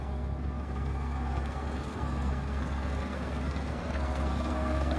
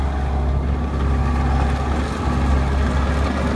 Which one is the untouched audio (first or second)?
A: second